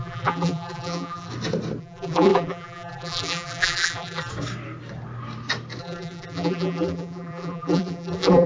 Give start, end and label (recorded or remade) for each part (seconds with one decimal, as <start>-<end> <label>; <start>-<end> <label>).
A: 0.0-1.3 remade; 1.3-1.8 recorded; 1.8-4.3 remade; 4.3-5.8 recorded; 5.8-8.5 remade